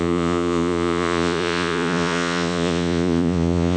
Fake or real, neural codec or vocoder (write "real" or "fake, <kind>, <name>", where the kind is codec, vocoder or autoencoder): fake, vocoder, Vocos